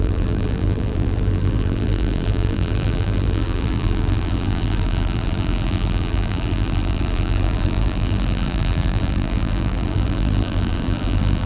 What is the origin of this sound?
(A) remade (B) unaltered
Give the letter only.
A